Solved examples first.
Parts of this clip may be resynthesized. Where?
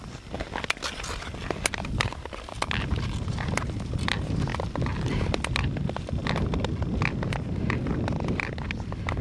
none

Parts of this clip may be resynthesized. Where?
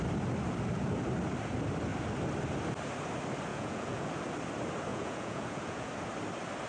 3.5-4.1; 4.9-5.9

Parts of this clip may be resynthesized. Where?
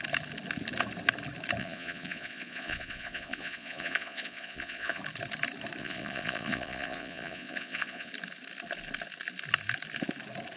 1.6-5.0; 5.8-8.1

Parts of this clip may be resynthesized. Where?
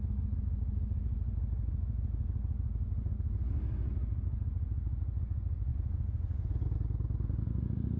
5.7-6.5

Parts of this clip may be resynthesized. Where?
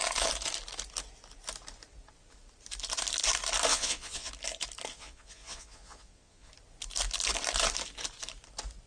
3.7-4.3; 4.9-6.5